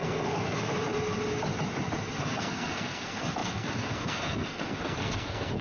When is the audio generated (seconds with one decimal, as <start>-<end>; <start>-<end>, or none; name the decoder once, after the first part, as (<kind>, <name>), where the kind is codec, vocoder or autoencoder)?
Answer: 0.0-0.7 (codec, SNAC); 2.2-5.6